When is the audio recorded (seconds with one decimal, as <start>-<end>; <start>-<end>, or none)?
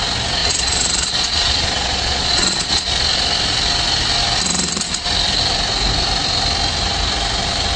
0.0-0.4; 2.9-7.8